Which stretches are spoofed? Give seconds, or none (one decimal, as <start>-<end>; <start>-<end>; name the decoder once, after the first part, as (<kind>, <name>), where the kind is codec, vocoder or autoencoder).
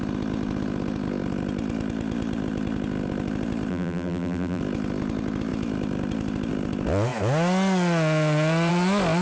3.7-4.6 (vocoder, BigVGAN v2)